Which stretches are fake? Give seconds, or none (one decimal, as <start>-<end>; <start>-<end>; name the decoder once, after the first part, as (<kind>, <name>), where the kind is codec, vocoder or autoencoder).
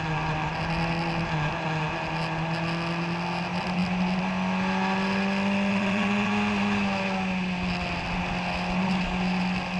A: 5.7-6.3 (vocoder, WaveNeXt)